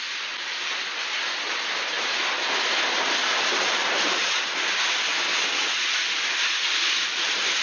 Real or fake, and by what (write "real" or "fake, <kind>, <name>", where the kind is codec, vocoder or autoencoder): real